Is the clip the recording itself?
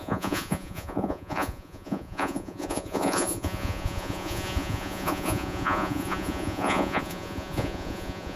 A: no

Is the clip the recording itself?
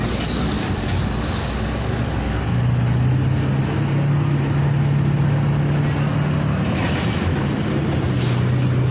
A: yes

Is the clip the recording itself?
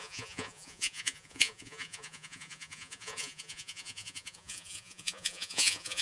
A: no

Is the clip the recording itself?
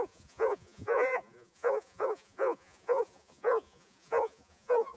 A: no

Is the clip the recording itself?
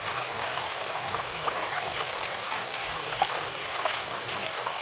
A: no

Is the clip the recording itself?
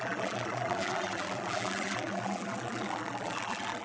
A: no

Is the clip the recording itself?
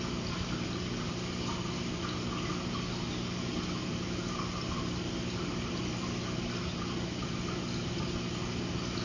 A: yes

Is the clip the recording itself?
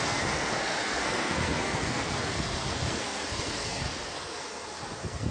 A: no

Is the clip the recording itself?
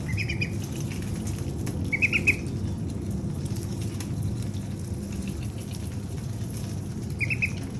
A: yes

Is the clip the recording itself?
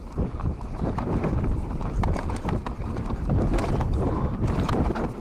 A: no